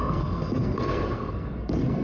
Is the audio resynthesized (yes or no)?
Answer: yes